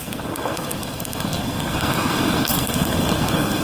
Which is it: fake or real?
fake